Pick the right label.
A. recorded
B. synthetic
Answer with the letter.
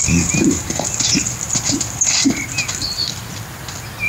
A